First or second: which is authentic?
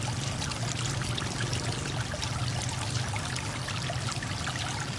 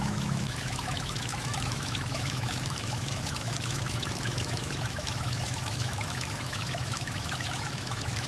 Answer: first